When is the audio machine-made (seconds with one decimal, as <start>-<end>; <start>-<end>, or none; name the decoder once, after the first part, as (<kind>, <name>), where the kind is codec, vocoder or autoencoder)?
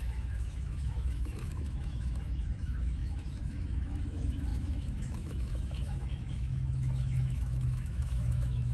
0.0-8.7 (autoencoder, DAC-VAE)